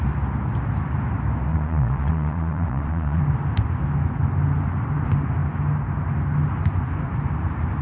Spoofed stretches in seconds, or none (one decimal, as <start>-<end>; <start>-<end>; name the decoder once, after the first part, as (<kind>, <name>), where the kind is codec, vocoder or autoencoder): 1.5-3.2 (vocoder, Vocos)